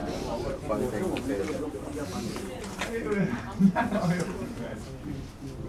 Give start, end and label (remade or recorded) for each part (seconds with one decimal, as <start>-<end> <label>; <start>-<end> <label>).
0.0-1.6 recorded; 1.6-5.7 remade